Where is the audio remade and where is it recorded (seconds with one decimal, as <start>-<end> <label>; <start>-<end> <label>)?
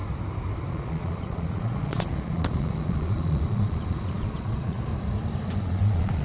0.0-0.7 recorded; 0.7-4.9 remade; 4.9-5.6 recorded; 5.6-6.2 remade